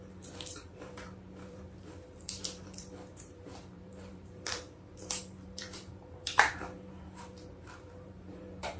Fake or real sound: fake